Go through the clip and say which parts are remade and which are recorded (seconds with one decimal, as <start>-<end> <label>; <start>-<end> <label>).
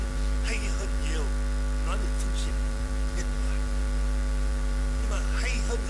0.0-1.0 remade; 1.0-2.5 recorded; 2.5-5.9 remade